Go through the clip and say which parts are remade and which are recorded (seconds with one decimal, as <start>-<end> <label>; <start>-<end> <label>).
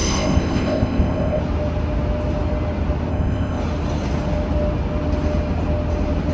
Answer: 0.0-1.4 remade; 1.4-3.1 recorded; 3.1-3.6 remade; 3.6-6.3 recorded